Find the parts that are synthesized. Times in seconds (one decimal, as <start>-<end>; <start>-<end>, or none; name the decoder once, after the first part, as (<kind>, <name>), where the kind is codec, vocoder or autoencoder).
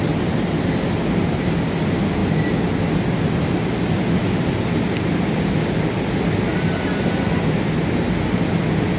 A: none